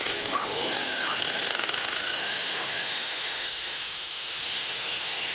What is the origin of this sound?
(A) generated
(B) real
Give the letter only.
A